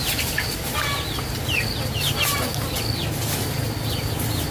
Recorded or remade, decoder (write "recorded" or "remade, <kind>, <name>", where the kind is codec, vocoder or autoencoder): recorded